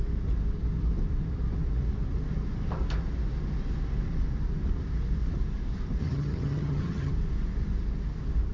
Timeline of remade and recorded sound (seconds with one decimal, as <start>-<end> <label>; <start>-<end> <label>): 0.0-6.0 recorded; 6.0-7.1 remade; 7.1-8.5 recorded